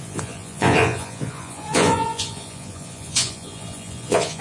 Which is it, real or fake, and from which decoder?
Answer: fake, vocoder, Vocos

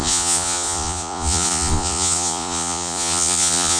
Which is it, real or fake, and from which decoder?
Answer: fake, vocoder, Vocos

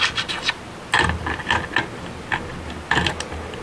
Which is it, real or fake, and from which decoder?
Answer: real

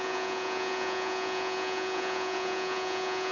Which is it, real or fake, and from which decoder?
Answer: fake, vocoder, Vocos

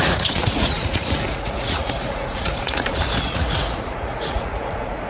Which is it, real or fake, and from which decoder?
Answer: fake, vocoder, Vocos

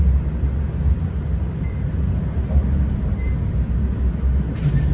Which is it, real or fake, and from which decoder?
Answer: real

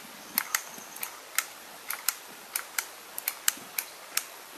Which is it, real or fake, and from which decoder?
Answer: real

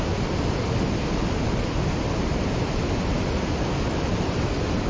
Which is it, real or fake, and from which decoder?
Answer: real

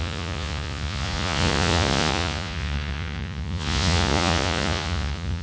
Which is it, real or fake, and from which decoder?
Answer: fake, vocoder, Vocos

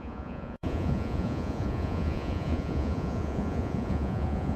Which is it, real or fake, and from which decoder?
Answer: fake, vocoder, Vocos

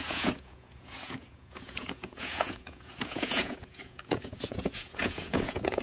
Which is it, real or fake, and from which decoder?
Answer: fake, vocoder, Vocos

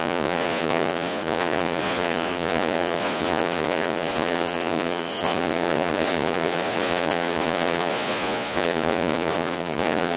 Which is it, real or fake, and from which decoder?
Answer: fake, vocoder, Vocos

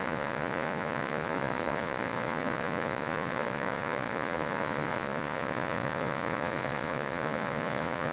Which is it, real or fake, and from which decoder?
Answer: fake, vocoder, Vocos